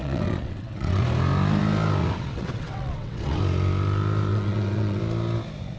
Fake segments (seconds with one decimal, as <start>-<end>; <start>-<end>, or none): 0.0-1.0; 2.0-3.4; 4.3-5.0